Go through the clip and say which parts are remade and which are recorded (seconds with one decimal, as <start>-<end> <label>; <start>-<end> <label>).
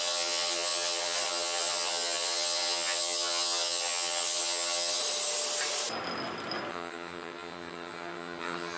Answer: 0.0-5.0 remade; 5.0-6.7 recorded; 6.7-8.8 remade